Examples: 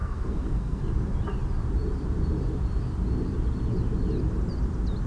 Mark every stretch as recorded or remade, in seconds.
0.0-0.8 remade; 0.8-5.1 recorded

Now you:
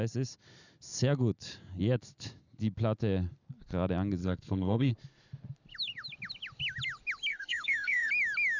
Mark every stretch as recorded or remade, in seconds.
0.0-4.2 recorded; 4.2-4.9 remade; 4.9-7.3 recorded; 7.3-8.1 remade; 8.1-8.6 recorded

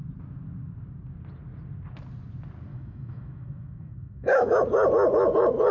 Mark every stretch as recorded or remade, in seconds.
0.0-2.7 recorded; 2.7-4.6 remade; 4.6-5.7 recorded

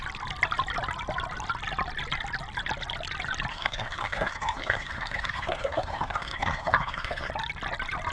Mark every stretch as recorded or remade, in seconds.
0.0-3.5 recorded; 3.5-7.3 remade; 7.3-8.1 recorded

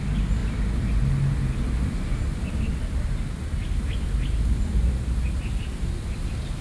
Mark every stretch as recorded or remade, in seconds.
0.0-6.6 recorded